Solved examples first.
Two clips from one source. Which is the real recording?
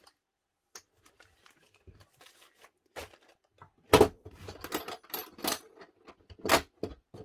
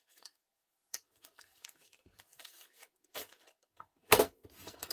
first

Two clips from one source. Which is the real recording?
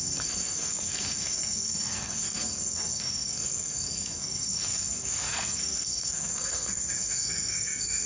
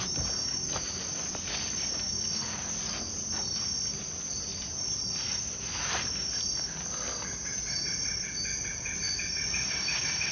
second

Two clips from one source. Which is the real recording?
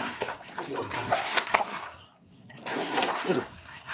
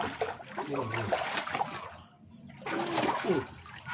second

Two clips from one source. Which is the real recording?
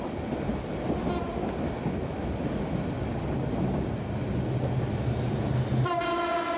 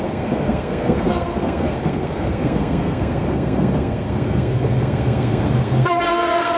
first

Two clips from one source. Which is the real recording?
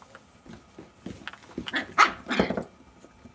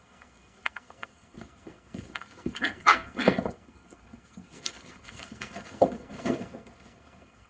first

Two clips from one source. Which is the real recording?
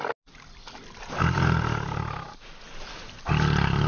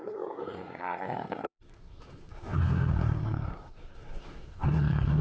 first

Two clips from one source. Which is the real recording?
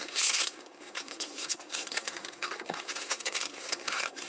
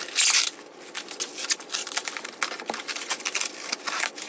second